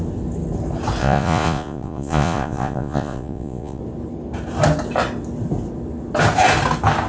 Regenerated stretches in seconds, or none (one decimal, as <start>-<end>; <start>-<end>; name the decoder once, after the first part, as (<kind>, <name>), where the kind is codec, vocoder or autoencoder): 1.0-3.8 (vocoder, Vocos)